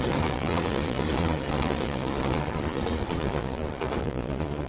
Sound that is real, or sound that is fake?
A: fake